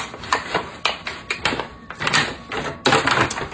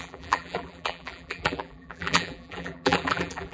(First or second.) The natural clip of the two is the first